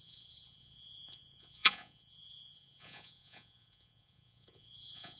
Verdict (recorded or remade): remade